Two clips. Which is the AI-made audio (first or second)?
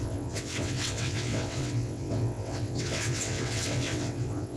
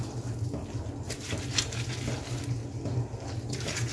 first